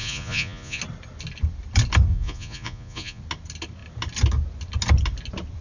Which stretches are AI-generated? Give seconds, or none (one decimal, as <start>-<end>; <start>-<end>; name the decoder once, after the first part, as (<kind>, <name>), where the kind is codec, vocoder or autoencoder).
0.0-0.8 (vocoder, Vocos); 2.1-3.2